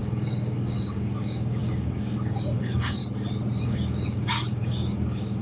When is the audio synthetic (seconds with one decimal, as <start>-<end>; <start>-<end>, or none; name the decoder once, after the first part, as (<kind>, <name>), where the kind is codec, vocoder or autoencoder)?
0.0-3.0 (codec, DAC); 3.6-5.4